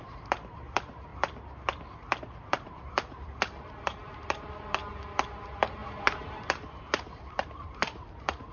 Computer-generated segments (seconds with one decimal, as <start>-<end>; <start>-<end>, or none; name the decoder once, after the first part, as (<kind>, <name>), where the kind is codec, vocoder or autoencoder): 0.0-1.1 (vocoder, BigVGAN v2); 2.2-8.5